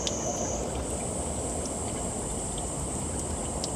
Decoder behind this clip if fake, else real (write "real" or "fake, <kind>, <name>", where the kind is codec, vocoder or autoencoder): real